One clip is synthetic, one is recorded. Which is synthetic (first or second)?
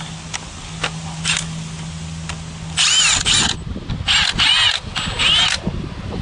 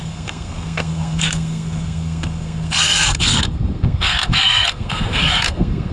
second